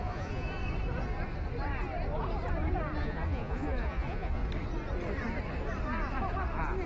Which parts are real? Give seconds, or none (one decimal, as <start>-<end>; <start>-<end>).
0.6-3.0; 4.4-6.9